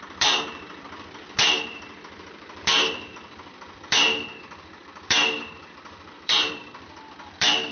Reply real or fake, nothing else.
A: fake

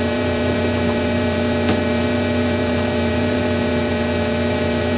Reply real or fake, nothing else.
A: fake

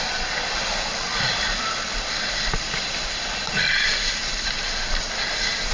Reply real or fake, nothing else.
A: fake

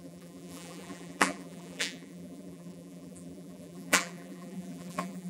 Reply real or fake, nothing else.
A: fake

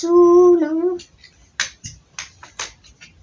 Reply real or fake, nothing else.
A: real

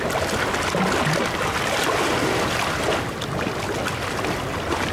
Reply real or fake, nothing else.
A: real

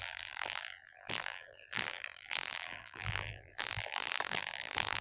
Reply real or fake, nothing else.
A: fake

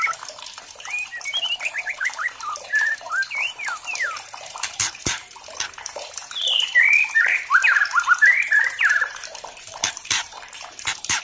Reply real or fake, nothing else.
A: fake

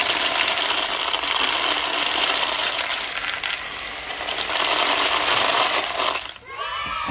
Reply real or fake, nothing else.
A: fake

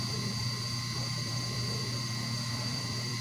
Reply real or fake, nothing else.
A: fake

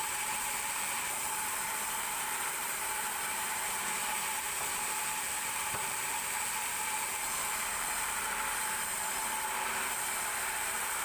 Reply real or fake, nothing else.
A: fake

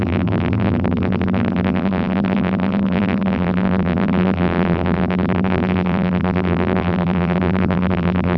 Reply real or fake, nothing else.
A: fake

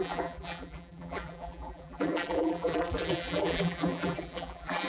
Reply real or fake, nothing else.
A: fake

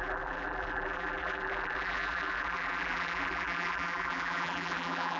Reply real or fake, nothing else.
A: fake